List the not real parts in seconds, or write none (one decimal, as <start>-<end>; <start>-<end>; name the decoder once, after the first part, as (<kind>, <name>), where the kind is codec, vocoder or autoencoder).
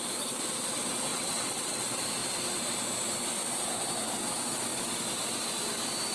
1.1-1.8 (vocoder, WaveNeXt)